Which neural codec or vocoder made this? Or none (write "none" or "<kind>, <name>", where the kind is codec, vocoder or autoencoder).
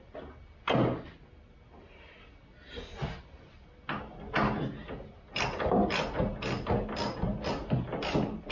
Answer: none